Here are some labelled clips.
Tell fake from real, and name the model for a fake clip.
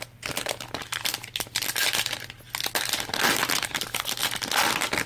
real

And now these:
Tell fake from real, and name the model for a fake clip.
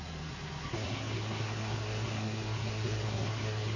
fake, codec, SNAC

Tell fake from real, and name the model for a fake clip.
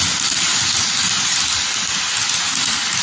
real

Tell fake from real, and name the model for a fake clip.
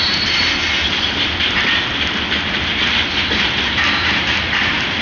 real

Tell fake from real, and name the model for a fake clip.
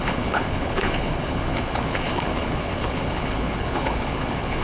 fake, codec, HILCodec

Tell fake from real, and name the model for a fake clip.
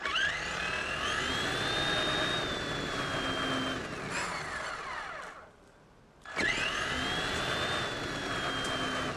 real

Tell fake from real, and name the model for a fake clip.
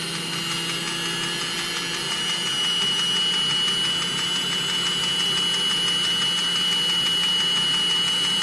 real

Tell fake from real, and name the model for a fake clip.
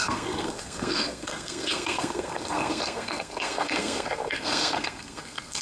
fake, codec, SNAC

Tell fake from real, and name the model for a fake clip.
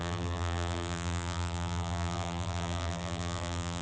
fake, vocoder, BigVGAN v2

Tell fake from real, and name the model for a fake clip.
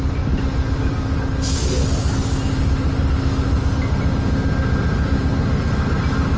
real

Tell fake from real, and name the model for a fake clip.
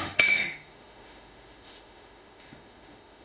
fake, autoencoder, DAC-VAE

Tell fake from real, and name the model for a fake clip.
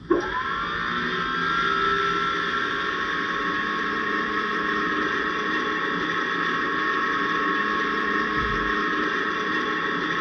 real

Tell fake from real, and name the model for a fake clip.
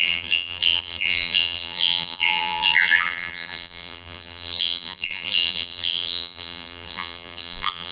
fake, vocoder, BigVGAN v2